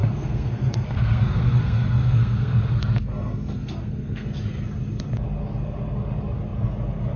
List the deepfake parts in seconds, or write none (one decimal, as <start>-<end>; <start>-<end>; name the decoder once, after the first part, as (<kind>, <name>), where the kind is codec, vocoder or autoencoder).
0.0-4.3 (codec, SNAC)